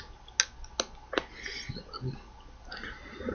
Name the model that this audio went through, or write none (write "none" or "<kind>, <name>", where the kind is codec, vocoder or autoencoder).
none